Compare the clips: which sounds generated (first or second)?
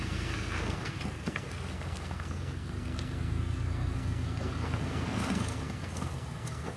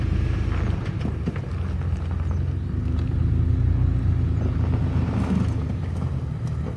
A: first